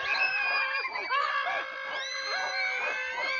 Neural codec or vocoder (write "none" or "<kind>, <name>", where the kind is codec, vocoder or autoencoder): none